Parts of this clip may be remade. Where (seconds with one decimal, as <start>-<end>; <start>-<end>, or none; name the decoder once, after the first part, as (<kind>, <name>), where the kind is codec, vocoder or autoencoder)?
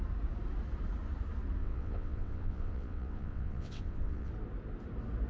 1.6-4.3 (vocoder, WaveNeXt)